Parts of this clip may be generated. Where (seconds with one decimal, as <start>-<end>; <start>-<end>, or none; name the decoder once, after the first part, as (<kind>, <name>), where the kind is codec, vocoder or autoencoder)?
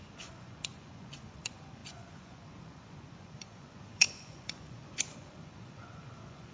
0.0-6.5 (vocoder, Vocos)